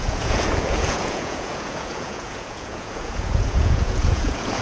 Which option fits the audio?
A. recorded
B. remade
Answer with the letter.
B